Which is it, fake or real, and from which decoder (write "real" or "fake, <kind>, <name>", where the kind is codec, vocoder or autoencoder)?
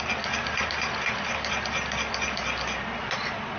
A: real